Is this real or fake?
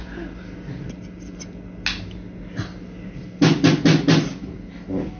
real